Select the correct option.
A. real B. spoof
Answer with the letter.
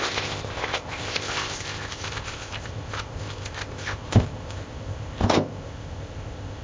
B